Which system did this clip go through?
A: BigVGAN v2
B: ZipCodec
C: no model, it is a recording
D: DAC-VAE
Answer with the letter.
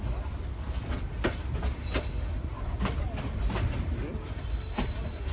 C